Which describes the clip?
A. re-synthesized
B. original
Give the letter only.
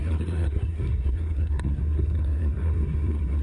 A